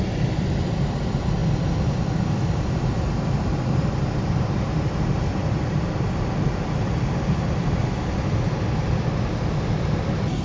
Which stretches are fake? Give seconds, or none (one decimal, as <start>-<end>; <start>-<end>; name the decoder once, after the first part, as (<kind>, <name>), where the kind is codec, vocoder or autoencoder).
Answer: none